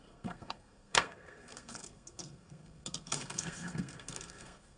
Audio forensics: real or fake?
fake